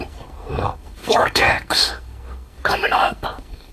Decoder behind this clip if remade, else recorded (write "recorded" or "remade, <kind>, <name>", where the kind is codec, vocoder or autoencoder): remade, codec, SNAC